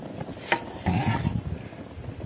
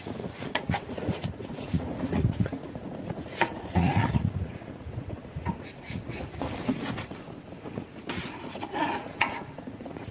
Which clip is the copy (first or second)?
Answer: second